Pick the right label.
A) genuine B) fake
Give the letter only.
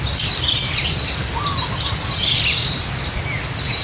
A